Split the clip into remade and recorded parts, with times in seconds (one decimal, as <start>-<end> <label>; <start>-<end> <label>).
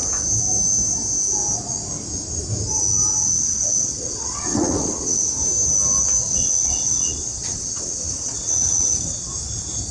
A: 0.0-3.2 recorded; 3.2-5.3 remade; 5.3-6.3 recorded; 6.3-9.3 remade; 9.3-9.9 recorded